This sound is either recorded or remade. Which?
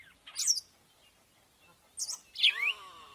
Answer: recorded